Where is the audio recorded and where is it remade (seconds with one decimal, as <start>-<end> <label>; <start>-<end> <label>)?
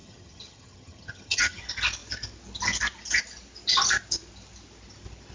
0.0-1.6 remade; 1.6-5.3 recorded